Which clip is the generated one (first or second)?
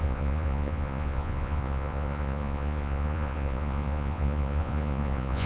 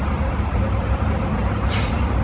first